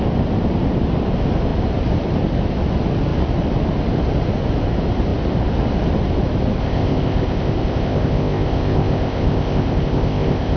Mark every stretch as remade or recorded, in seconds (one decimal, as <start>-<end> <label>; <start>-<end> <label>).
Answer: 0.0-6.6 recorded; 6.6-10.6 remade